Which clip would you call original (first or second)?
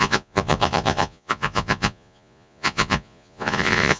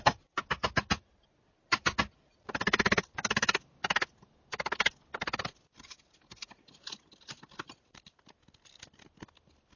second